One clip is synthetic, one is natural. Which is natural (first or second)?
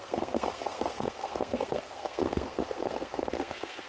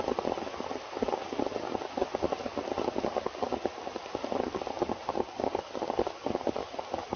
second